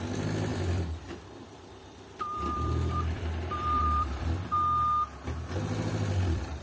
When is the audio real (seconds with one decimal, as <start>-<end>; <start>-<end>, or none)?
0.0-0.5; 4.5-5.9